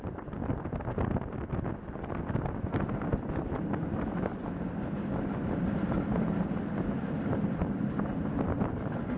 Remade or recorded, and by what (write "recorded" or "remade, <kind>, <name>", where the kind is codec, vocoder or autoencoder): recorded